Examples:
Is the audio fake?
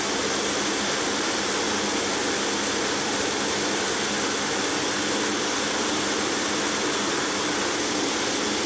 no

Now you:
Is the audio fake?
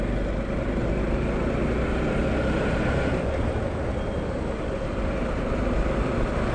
no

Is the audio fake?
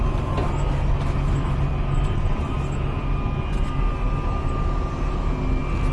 no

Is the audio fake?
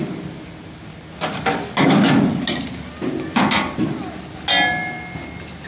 no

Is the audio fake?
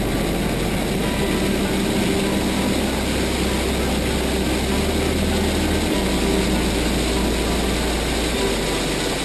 no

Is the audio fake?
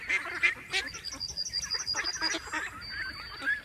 no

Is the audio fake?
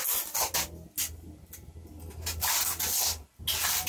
no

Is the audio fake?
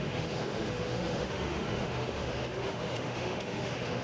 yes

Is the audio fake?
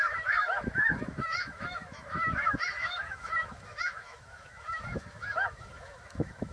yes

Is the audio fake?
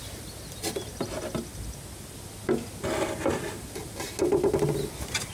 no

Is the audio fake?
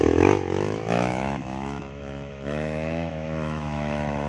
yes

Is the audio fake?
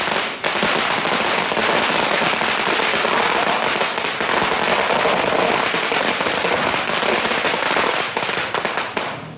no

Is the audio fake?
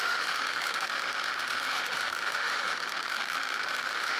yes